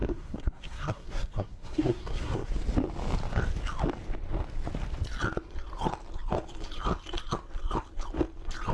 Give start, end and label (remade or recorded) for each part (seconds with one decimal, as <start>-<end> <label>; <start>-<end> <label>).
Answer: 0.0-2.5 remade; 2.5-8.7 recorded